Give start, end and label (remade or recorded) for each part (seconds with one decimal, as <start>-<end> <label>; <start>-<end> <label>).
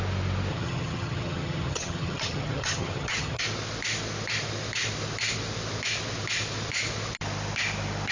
0.0-0.5 recorded; 0.5-3.4 remade; 3.4-8.1 recorded